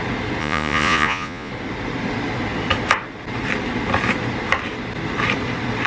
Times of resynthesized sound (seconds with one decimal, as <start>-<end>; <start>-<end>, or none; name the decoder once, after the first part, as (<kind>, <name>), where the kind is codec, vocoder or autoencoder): 0.4-1.5 (vocoder, Vocos)